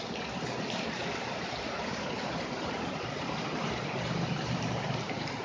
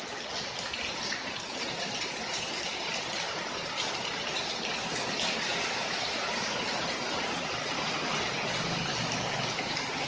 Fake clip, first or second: first